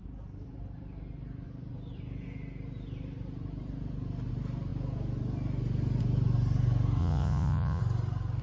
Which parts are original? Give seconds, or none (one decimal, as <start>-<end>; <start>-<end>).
0.0-7.0; 7.8-8.4